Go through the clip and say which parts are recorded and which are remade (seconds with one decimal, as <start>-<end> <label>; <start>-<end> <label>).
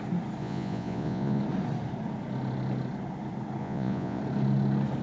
0.0-0.4 recorded; 0.4-1.4 remade; 1.4-3.6 recorded; 3.6-4.2 remade; 4.2-5.0 recorded